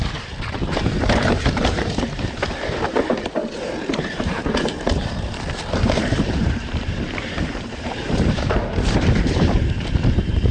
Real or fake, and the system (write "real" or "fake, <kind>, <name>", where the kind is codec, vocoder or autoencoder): fake, vocoder, BigVGAN v2